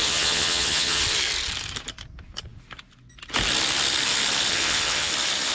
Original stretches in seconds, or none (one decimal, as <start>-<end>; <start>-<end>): 1.0-4.5; 5.1-5.5